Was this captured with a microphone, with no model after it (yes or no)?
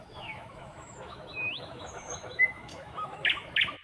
no